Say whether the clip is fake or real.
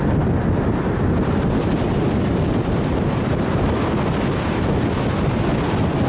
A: real